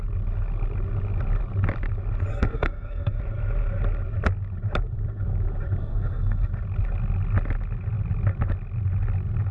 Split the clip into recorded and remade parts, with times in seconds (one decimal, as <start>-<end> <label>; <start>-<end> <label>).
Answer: 0.0-2.3 recorded; 2.3-3.2 remade; 3.2-5.8 recorded; 5.8-6.5 remade; 6.5-9.5 recorded